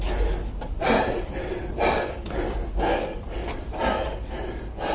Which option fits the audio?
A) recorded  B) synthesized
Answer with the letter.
A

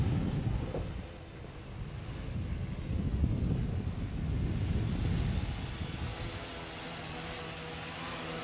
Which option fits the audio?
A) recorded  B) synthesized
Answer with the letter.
A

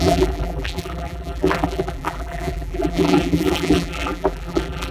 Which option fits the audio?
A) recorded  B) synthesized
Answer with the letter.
B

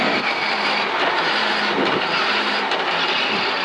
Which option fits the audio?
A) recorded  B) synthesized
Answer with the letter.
B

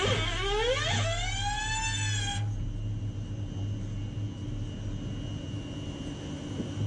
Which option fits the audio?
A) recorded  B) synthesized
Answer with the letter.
A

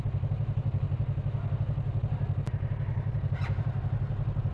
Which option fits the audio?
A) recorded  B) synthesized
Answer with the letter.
A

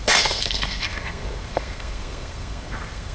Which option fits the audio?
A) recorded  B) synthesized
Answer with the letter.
B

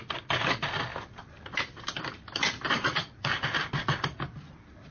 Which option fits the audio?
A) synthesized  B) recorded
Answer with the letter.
B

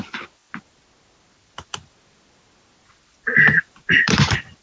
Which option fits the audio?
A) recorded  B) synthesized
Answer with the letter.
A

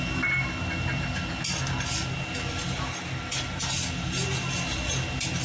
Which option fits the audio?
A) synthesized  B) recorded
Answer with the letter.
B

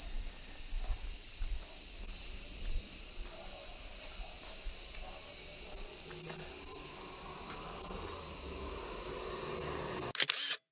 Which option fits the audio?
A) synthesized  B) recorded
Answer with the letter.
B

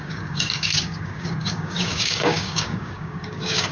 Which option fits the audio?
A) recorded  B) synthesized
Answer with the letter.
B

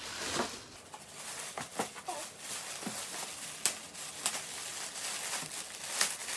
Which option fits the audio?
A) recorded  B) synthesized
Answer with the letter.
A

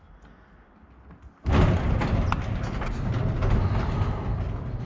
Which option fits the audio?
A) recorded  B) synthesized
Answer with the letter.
A